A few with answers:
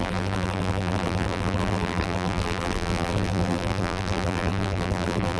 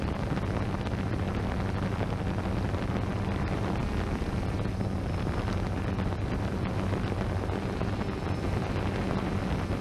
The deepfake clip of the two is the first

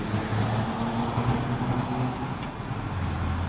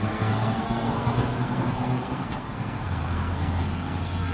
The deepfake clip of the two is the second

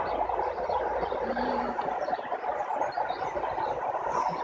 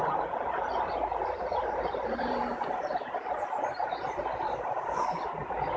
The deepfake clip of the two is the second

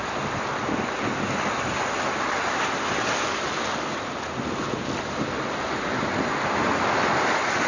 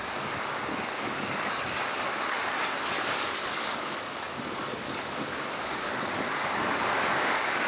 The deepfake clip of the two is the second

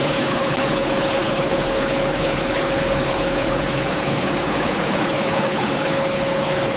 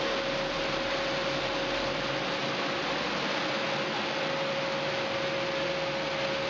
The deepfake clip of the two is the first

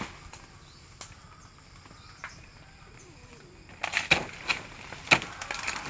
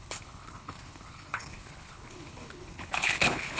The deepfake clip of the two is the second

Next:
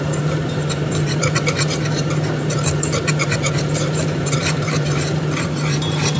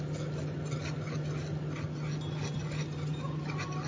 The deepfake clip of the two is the first